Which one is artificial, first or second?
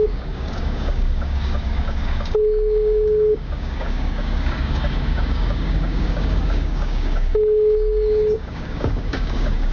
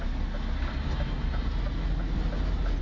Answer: first